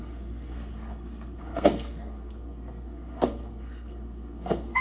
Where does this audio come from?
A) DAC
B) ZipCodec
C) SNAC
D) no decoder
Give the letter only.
C